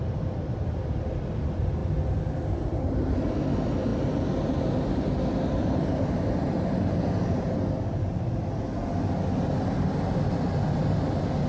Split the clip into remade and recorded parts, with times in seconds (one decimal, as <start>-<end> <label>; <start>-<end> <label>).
0.0-11.5 recorded